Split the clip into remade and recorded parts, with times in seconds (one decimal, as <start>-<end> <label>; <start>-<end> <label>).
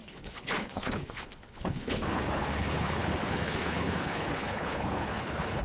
0.0-5.6 remade